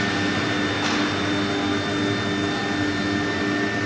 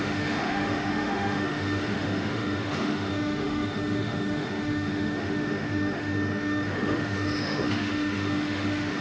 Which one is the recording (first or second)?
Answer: first